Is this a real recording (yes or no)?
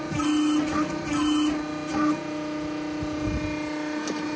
yes